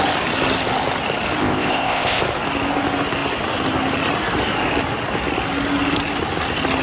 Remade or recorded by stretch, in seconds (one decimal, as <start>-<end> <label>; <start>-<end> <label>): 0.0-1.4 recorded; 1.4-2.2 remade; 2.2-6.8 recorded